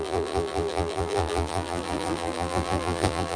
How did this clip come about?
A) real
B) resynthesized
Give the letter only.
B